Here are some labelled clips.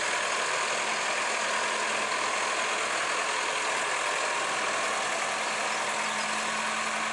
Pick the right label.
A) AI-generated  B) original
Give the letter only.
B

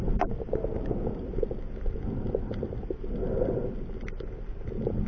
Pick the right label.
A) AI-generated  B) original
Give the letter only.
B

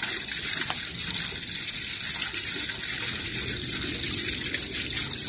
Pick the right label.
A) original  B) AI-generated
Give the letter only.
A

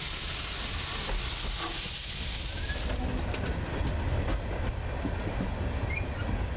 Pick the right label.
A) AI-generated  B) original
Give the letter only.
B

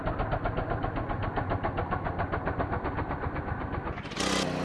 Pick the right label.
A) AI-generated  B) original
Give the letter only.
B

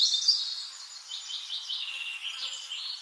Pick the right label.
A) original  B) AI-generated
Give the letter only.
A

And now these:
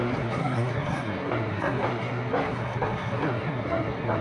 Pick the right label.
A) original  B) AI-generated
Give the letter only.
B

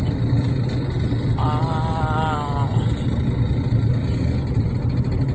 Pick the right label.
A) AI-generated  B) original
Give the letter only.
B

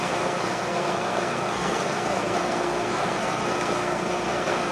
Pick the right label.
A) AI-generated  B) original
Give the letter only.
A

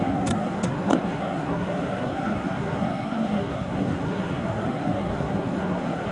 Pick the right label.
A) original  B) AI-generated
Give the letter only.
B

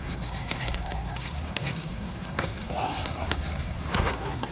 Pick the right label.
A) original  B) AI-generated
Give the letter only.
B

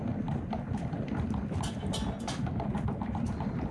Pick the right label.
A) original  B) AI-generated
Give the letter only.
A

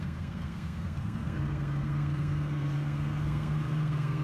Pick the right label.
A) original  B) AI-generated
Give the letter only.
B